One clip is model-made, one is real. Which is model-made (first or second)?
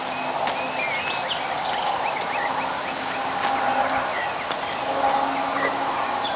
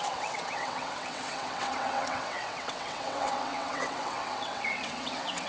second